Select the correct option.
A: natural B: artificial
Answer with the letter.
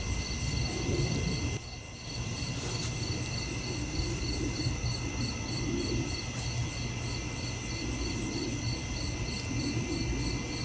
A